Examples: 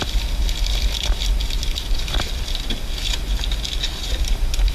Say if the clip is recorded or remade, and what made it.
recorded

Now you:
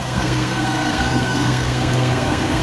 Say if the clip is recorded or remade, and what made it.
remade, codec, SNAC